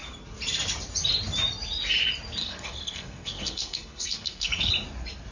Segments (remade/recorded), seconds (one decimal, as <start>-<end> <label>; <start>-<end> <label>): 0.0-2.4 recorded; 2.4-4.7 remade; 4.7-5.3 recorded